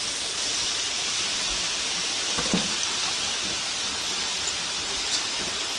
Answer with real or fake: real